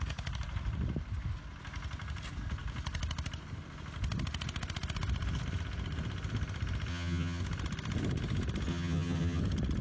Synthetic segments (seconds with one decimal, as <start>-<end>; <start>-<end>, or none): 6.9-7.4; 8.7-9.4